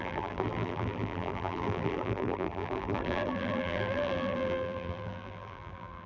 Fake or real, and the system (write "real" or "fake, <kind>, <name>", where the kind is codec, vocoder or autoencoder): fake, vocoder, BigVGAN v2